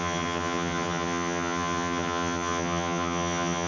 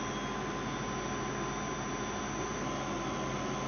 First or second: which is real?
second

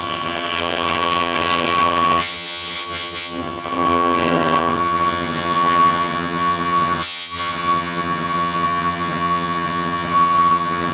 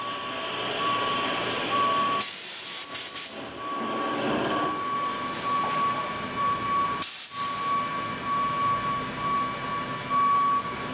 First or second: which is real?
second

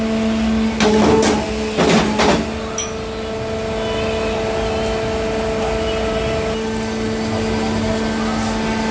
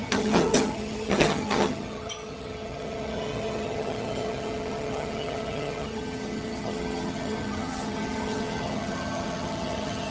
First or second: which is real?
first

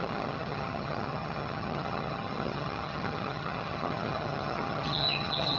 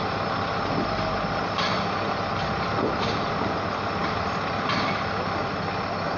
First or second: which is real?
second